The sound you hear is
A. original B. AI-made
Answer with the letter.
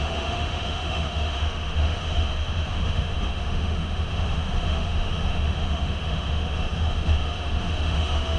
B